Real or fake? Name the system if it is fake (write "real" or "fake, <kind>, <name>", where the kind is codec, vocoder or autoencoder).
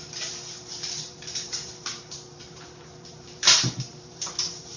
fake, vocoder, BigVGAN v2